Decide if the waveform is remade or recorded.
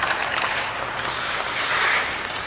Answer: remade